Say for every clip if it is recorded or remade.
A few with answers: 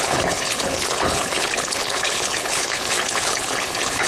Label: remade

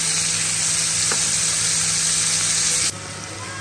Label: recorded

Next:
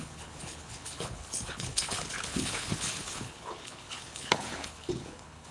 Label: remade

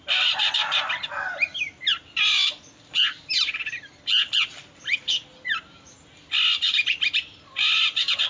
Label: recorded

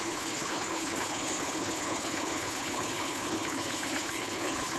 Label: remade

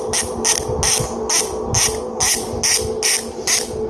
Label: recorded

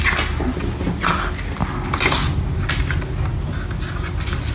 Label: recorded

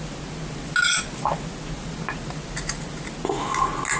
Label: recorded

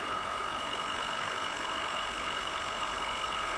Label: remade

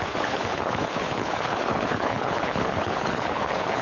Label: remade